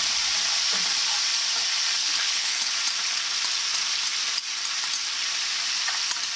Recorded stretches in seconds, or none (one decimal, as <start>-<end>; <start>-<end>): 0.0-2.0; 2.7-6.4